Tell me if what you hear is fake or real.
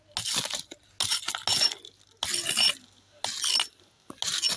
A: real